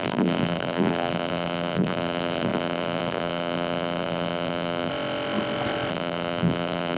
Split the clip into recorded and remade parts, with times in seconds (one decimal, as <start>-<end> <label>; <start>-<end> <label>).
0.0-4.9 remade; 4.9-5.9 recorded; 5.9-7.0 remade